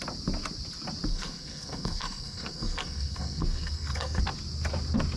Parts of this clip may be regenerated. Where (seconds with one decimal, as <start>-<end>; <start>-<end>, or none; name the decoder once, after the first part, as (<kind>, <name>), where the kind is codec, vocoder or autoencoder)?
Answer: 1.1-4.2 (codec, SNAC)

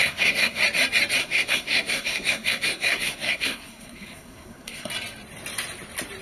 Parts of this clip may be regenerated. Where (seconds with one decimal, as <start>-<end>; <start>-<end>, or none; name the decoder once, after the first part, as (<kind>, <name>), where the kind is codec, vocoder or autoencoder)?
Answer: 0.0-0.6 (codec, SNAC); 1.2-4.9

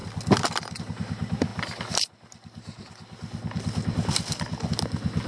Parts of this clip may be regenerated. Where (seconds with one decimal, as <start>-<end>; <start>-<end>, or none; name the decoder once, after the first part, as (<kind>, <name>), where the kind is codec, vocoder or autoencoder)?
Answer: none

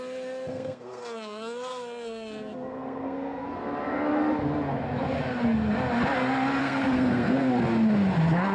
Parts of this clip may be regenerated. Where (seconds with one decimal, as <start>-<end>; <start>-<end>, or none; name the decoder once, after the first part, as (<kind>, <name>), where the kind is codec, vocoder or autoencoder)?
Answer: 0.5-3.6 (codec, SNAC); 6.6-7.5

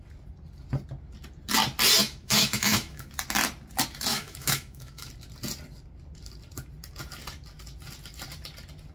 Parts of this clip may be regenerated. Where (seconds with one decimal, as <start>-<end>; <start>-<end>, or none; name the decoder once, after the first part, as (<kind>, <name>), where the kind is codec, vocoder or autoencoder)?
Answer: 2.0-3.1 (autoencoder, DAC-VAE); 4.1-5.1

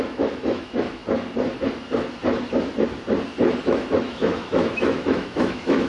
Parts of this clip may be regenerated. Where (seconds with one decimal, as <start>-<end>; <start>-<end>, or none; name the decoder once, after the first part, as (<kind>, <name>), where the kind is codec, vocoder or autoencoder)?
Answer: 0.0-1.0 (autoencoder, DAC-VAE); 3.6-5.9